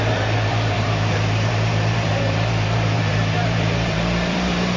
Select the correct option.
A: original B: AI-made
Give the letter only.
B